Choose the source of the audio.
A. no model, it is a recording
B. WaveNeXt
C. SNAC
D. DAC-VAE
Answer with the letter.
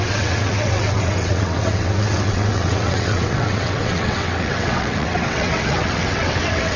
B